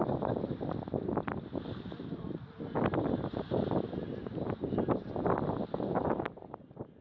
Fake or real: real